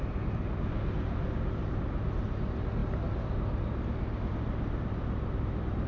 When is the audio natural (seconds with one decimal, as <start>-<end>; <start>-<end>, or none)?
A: 0.0-5.9